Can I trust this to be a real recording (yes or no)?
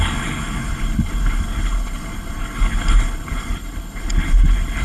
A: no